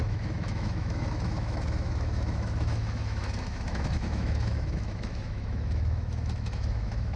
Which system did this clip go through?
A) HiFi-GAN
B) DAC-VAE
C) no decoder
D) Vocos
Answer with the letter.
B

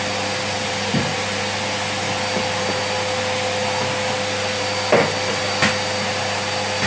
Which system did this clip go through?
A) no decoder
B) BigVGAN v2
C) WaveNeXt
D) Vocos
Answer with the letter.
A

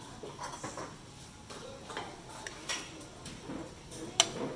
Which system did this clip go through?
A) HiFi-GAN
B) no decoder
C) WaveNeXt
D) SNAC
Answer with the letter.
B